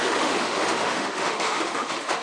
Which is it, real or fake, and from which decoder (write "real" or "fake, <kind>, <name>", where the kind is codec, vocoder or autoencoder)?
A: fake, autoencoder, DAC-VAE